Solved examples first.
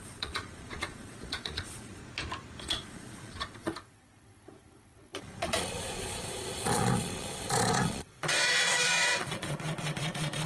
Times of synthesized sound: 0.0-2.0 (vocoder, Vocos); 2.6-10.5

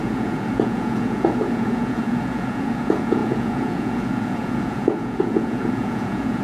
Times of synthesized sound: 0.0-6.4 (vocoder, Vocos)